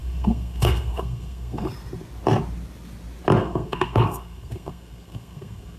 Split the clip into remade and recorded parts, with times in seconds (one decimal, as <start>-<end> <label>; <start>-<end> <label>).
0.0-1.7 remade; 1.7-3.4 recorded; 3.4-5.8 remade